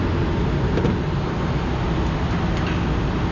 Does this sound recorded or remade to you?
recorded